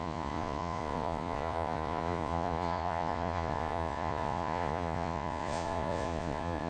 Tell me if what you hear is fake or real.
fake